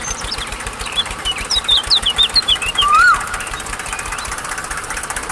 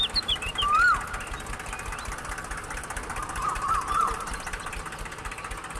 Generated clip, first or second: first